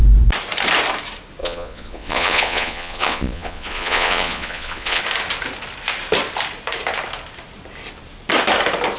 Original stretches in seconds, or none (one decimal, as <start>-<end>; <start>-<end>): 0.0-1.4; 5.0-9.0